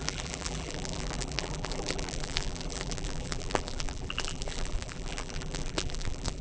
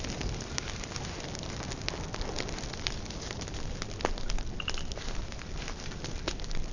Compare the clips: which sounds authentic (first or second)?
second